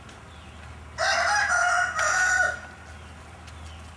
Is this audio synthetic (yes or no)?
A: no